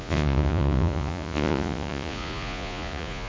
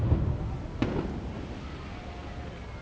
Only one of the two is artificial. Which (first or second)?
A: first